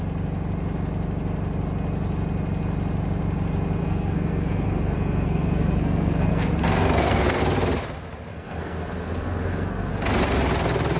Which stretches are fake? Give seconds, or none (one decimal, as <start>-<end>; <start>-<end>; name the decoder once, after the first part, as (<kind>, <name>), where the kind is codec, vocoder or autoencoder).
3.8-7.4 (codec, SNAC); 8.3-9.9